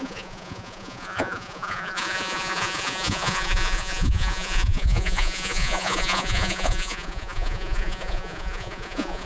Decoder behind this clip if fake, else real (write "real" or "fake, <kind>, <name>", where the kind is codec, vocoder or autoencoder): fake, vocoder, Vocos